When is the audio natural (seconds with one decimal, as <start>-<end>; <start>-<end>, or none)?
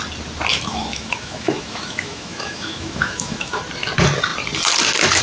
0.0-0.5; 3.6-5.2